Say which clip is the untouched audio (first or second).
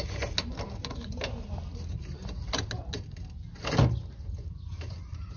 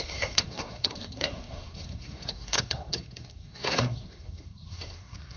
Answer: first